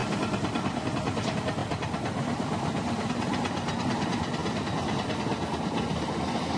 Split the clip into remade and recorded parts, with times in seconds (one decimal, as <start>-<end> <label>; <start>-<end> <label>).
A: 0.0-0.9 remade; 0.9-1.6 recorded; 1.6-3.1 remade; 3.1-6.6 recorded